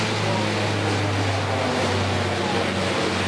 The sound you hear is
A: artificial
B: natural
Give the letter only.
B